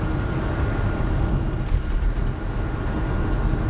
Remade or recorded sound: recorded